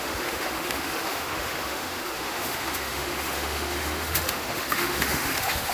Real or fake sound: fake